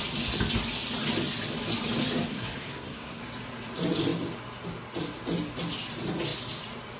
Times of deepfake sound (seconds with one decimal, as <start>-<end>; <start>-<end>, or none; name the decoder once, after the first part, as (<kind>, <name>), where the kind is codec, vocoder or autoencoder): 2.3-3.2 (codec, SNAC)

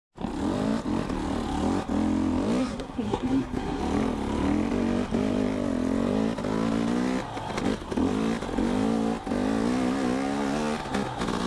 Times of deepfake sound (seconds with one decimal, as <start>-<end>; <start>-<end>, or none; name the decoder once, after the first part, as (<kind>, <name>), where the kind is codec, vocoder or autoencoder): 2.6-3.8 (codec, SNAC)